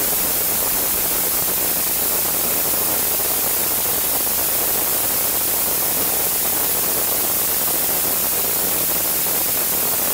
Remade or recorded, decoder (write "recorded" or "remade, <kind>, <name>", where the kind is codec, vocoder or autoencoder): recorded